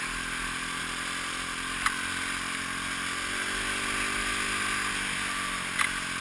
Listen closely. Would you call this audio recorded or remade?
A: recorded